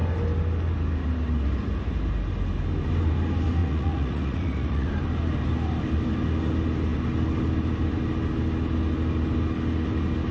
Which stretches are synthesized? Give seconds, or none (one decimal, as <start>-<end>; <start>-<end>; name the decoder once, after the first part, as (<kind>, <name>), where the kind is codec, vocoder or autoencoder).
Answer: 3.6-4.9 (vocoder, Vocos)